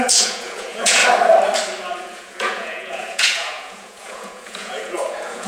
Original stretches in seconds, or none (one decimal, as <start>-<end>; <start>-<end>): 1.0-2.0